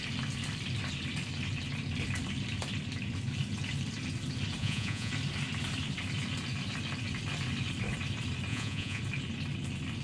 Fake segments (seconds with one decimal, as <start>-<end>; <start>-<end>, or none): 4.6-5.1; 8.5-9.0

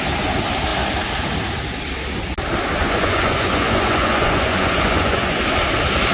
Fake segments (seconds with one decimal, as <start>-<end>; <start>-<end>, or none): 2.8-5.4

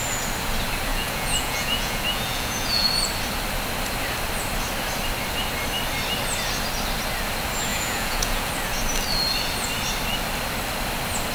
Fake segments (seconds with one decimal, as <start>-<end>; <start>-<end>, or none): 0.9-2.9; 7.7-8.5